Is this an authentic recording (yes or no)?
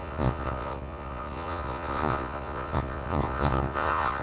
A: no